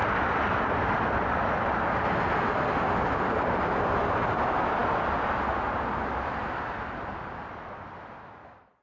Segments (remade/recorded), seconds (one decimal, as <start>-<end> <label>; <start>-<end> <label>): 0.0-8.8 recorded